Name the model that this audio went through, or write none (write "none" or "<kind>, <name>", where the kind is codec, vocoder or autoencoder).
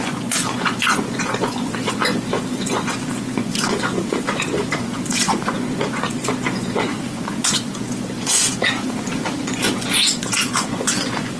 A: vocoder, Vocos